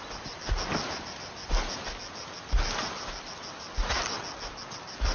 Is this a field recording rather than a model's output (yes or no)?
yes